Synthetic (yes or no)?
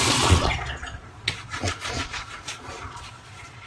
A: yes